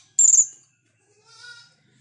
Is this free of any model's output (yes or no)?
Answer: yes